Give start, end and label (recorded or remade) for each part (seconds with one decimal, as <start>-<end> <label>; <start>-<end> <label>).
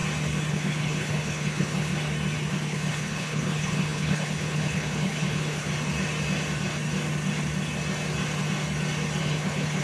0.0-0.5 recorded; 0.5-1.9 remade; 1.9-2.5 recorded; 2.5-5.7 remade; 5.7-9.2 recorded; 9.2-9.8 remade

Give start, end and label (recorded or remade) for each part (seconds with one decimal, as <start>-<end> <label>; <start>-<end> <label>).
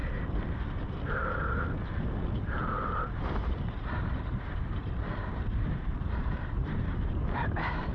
0.0-2.4 recorded; 2.4-7.9 remade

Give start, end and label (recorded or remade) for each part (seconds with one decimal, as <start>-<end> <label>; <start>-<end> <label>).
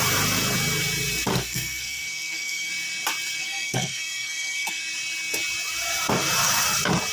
0.0-1.3 recorded; 1.3-2.7 remade; 2.7-3.4 recorded; 3.4-4.8 remade; 4.8-7.1 recorded